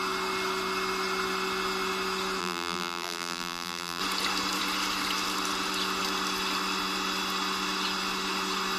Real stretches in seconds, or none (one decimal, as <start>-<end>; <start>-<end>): 0.0-2.4; 4.0-8.8